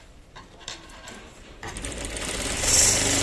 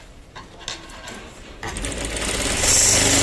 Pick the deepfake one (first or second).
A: first